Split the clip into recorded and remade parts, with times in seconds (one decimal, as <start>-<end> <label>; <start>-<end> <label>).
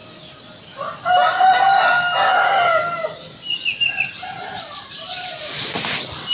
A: 0.0-3.8 recorded; 3.8-6.3 remade